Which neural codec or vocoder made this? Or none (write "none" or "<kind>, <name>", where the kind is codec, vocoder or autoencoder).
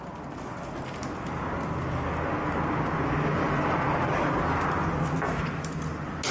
none